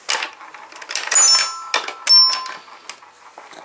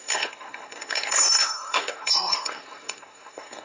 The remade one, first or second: second